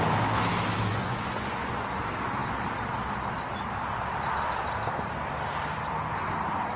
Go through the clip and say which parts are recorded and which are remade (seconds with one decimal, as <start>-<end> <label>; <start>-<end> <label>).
0.0-0.9 recorded; 0.9-2.0 remade; 2.0-6.8 recorded